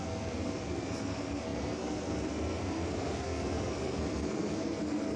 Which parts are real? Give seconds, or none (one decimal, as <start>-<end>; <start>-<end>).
none